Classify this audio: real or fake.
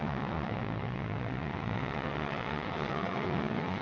fake